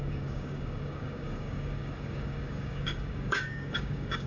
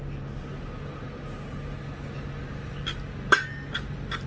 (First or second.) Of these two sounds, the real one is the second